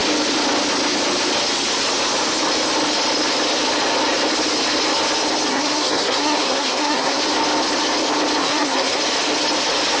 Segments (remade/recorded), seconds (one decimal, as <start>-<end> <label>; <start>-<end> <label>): 0.0-5.5 recorded; 5.5-7.2 remade; 7.2-8.4 recorded; 8.4-9.0 remade; 9.0-10.0 recorded